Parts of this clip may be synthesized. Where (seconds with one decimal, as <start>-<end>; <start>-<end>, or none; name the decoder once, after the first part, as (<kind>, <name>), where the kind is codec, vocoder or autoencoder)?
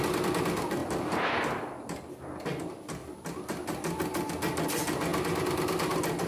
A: 0.8-1.3 (vocoder, BigVGAN v2)